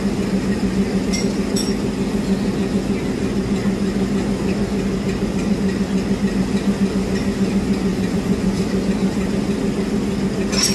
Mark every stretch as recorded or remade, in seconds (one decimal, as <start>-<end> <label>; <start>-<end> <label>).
0.0-7.9 recorded; 7.9-8.6 remade; 8.6-10.7 recorded